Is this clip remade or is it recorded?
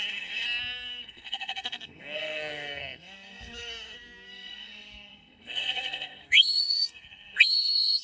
remade